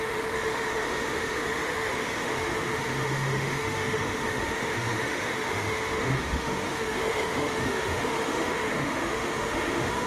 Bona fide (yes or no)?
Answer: no